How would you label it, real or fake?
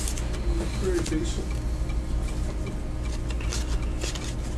real